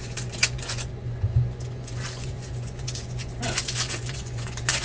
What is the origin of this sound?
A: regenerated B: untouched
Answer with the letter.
A